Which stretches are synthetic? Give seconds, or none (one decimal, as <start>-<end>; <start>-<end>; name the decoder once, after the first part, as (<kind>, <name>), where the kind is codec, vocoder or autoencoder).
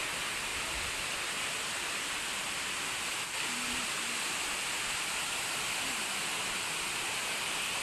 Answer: none